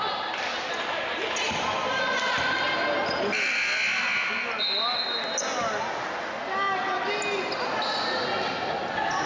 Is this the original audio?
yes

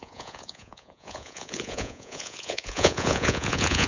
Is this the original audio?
no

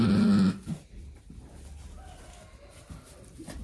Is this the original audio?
yes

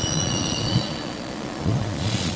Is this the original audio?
no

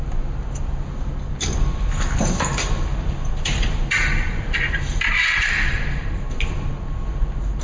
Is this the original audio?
yes